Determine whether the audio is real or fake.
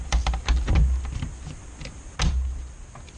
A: real